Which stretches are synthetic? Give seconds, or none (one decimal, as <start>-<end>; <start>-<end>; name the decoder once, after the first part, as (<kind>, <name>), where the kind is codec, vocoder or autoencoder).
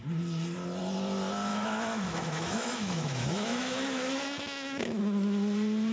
1.5-5.0 (autoencoder, DAC-VAE)